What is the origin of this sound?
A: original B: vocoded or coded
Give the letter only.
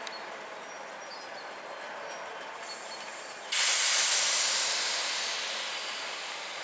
A